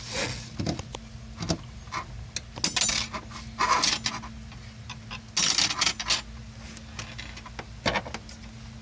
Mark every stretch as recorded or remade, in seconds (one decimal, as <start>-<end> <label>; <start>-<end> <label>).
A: 0.0-8.8 recorded